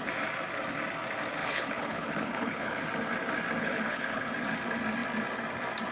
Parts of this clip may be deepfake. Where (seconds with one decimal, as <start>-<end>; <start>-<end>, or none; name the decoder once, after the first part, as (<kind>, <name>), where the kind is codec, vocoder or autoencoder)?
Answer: 1.4-2.8 (codec, HILCodec); 3.6-4.3